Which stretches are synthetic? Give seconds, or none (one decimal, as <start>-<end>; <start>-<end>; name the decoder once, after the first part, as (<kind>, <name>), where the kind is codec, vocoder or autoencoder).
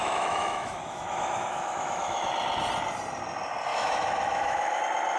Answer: 0.0-2.3 (autoencoder, DAC-VAE); 3.7-4.8